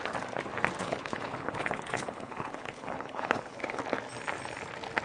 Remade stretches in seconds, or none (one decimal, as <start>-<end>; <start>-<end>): 0.8-3.8